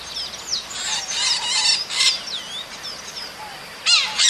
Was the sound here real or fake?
real